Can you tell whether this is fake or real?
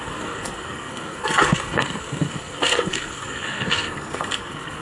fake